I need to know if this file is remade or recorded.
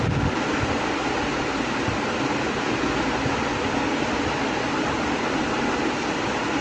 recorded